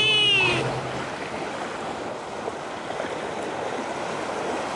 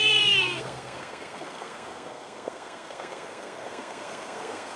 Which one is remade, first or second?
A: second